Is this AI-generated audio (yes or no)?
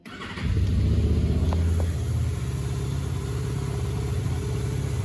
no